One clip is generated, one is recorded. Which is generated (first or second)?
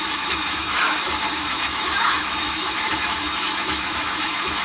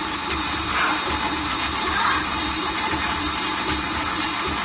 first